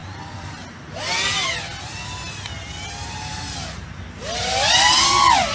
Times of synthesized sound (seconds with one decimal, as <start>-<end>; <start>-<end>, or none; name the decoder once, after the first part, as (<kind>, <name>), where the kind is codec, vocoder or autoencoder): 0.0-1.0 (vocoder, BigVGAN v2)